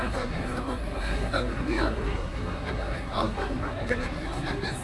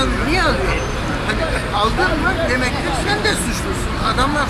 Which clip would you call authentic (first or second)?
second